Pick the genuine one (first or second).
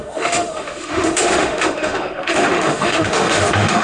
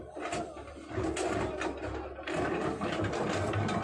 second